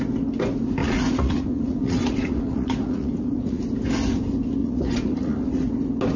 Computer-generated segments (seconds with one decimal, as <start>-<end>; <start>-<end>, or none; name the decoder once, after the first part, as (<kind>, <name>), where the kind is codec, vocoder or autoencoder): 0.8-3.6 (vocoder, Vocos); 4.6-5.7